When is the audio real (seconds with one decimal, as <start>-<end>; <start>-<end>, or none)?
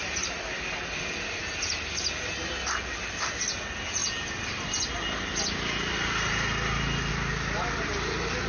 0.0-8.5